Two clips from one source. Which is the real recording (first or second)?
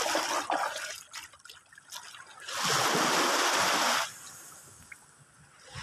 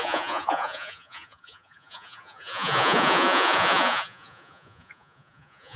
first